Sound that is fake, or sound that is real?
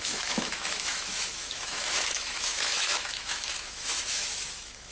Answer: fake